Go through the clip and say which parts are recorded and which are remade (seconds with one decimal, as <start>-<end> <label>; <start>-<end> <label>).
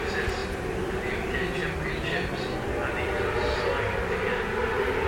0.0-5.1 recorded